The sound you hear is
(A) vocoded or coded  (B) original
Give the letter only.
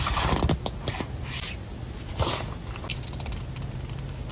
B